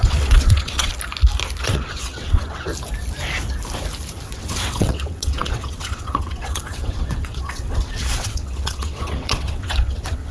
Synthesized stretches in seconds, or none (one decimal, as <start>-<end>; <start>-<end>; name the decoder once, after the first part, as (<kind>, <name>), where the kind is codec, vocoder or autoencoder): 0.0-0.9 (vocoder, WaveNeXt); 1.6-2.7; 4.3-10.3